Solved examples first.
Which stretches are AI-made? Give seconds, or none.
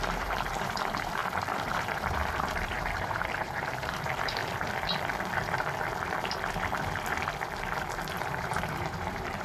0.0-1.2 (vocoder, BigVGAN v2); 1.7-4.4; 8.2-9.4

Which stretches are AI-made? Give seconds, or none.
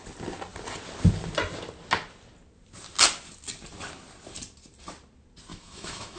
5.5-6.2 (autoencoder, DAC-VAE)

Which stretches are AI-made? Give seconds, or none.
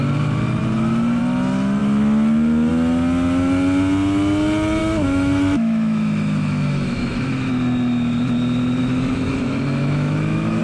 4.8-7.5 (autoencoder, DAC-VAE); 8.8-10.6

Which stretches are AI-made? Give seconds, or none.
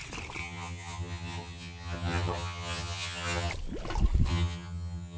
0.4-3.5 (vocoder, HiFi-GAN); 4.3-5.2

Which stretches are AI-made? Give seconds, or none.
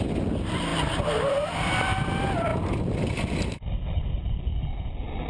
none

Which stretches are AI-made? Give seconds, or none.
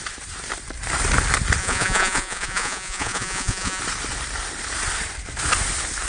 1.6-3.8 (vocoder, Vocos)